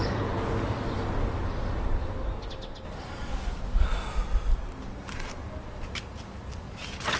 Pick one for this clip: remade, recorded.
recorded